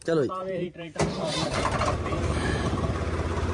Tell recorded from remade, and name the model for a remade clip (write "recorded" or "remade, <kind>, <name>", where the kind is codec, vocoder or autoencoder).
remade, vocoder, BigVGAN v2